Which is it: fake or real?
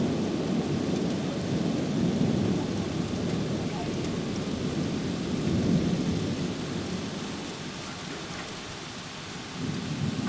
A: real